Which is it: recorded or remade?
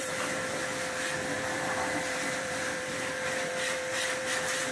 remade